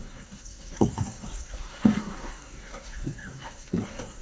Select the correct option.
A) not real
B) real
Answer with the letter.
A